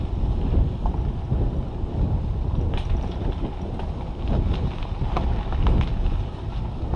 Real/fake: real